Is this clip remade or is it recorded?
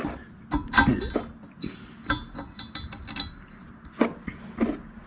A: recorded